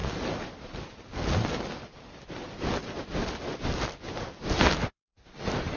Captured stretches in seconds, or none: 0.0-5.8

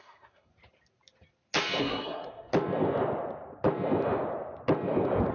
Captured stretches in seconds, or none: 0.5-1.8; 2.5-5.3

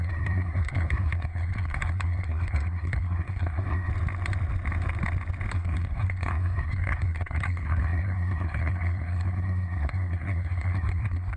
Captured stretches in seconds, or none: 3.9-5.5

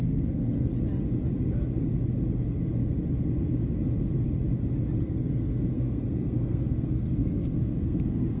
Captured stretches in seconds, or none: 0.7-5.0

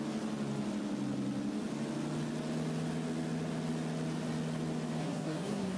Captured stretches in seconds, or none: 0.0-5.0

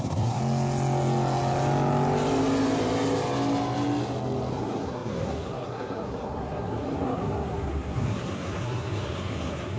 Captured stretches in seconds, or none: 0.4-4.5